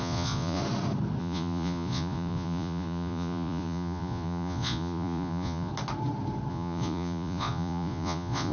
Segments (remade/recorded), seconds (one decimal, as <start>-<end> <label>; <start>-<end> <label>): 0.0-0.6 remade; 0.6-1.2 recorded; 1.2-5.7 remade; 5.7-6.5 recorded; 6.5-8.5 remade